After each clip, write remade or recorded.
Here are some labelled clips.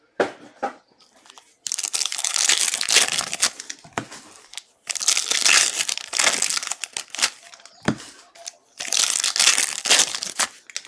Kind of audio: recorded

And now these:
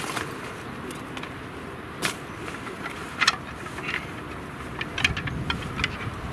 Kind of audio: recorded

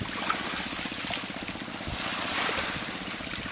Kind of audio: recorded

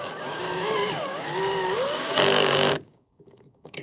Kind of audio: remade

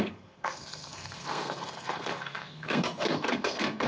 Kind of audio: remade